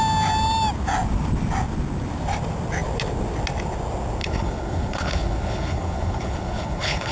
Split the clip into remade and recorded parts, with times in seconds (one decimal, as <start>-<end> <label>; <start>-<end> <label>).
0.0-4.2 recorded; 4.2-7.1 remade